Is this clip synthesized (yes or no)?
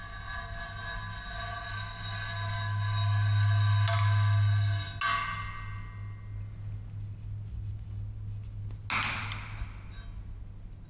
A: no